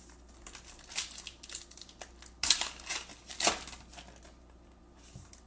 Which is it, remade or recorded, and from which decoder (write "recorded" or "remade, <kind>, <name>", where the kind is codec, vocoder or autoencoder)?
recorded